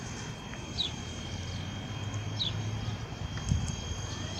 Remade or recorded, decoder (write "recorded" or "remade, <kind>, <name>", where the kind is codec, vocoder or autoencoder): recorded